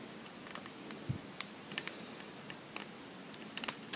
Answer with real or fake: real